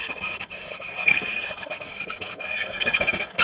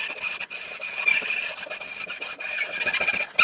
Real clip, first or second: second